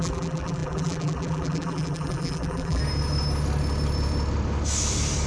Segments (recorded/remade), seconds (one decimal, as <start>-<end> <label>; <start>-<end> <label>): 0.0-2.8 remade; 2.8-5.3 recorded